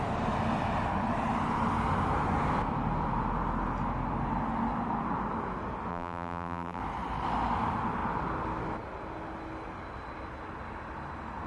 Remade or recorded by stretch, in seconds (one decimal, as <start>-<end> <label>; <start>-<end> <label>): 0.0-5.9 recorded; 5.9-6.8 remade; 6.8-11.5 recorded